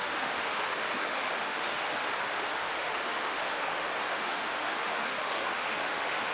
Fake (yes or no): yes